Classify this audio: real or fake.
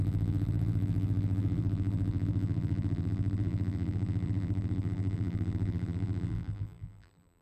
fake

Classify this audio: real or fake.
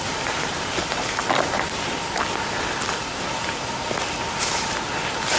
real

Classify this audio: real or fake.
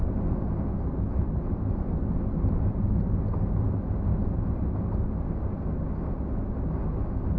real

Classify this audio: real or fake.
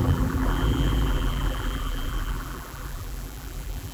fake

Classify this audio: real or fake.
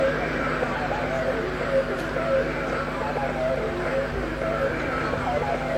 fake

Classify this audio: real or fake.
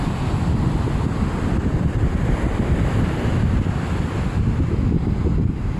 real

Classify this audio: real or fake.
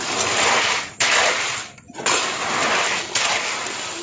real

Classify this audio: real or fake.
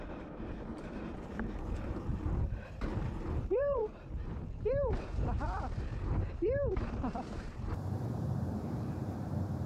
fake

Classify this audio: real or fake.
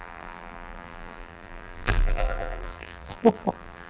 fake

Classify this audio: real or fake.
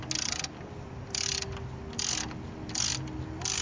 real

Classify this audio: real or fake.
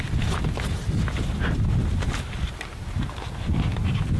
real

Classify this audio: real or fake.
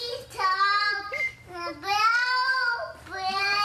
fake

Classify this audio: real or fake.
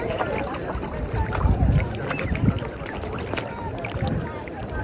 fake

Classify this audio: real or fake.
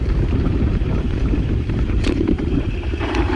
fake